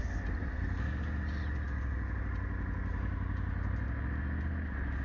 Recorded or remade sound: recorded